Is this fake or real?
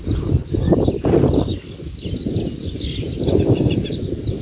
real